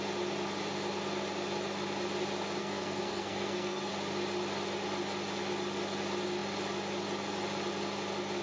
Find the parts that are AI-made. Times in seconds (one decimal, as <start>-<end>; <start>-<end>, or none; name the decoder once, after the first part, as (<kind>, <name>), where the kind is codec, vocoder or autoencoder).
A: 2.6-3.9 (codec, SNAC)